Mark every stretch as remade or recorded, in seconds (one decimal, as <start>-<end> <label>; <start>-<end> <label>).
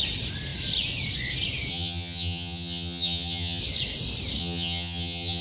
0.0-1.7 recorded; 1.7-3.6 remade; 3.6-4.4 recorded; 4.4-5.4 remade